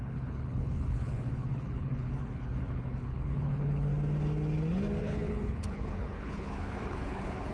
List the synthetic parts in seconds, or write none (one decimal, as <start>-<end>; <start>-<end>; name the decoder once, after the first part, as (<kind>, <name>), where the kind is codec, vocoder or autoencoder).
0.0-3.9 (codec, HILCodec); 5.0-7.5